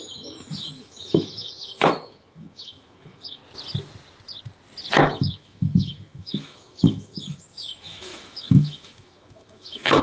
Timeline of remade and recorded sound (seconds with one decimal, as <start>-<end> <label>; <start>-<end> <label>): 0.0-3.4 remade; 3.4-5.0 recorded; 5.0-10.0 remade